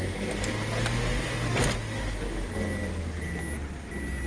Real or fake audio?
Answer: real